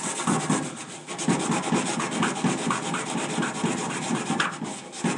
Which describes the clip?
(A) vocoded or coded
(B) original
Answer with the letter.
B